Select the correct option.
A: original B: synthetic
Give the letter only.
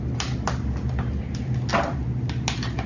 A